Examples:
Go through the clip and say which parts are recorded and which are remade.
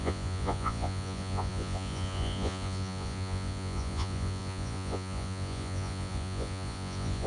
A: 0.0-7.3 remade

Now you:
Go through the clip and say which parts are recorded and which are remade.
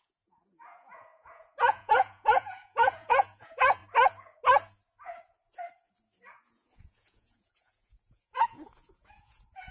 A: 0.0-3.8 remade; 3.8-6.3 recorded; 6.3-9.7 remade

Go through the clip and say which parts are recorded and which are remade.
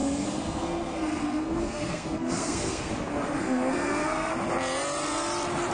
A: 0.0-2.9 remade; 2.9-3.4 recorded; 3.4-4.3 remade; 4.3-5.7 recorded